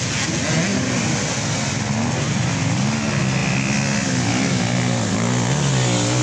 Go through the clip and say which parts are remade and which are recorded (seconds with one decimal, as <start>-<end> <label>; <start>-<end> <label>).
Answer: 0.0-6.2 recorded